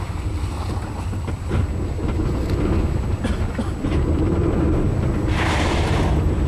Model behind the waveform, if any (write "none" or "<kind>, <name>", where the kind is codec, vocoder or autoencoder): none